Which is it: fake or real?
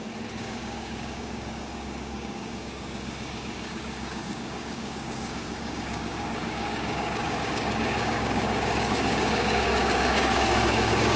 fake